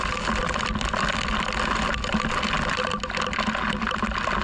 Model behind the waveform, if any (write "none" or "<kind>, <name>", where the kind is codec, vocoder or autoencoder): none